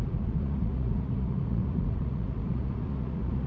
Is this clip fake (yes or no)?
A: yes